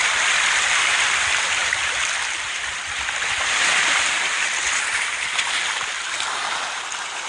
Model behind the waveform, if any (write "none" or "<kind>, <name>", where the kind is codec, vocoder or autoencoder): vocoder, BigVGAN v2